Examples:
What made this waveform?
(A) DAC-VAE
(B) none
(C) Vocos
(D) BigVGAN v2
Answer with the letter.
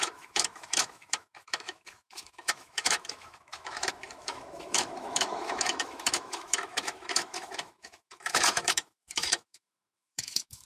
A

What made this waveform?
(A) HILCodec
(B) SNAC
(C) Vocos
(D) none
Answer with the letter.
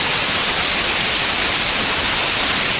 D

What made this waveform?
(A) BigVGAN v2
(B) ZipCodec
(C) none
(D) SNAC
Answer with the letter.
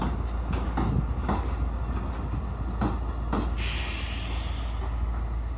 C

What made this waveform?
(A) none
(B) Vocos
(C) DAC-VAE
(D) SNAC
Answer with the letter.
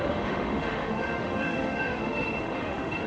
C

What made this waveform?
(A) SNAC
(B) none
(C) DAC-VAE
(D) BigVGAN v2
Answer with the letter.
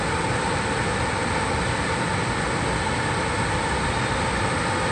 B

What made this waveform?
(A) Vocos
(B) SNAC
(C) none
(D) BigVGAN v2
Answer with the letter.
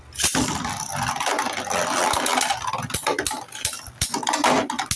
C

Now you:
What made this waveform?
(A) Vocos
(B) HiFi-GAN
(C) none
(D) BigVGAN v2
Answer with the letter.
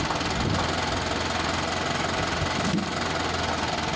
C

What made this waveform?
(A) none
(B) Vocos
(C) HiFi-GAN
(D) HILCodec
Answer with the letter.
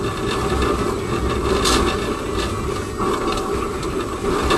A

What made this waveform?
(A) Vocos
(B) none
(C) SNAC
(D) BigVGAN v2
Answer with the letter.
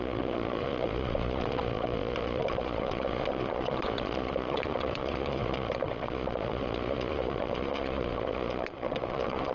A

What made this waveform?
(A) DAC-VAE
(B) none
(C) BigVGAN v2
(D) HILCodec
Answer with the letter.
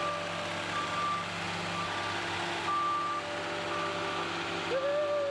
B